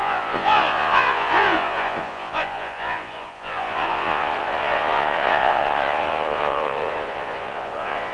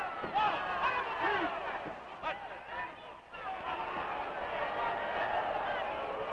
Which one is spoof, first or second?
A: first